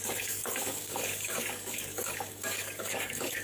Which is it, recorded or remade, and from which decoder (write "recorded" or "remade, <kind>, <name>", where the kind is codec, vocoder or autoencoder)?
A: remade, codec, DAC